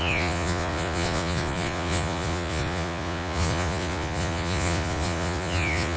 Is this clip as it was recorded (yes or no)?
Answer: no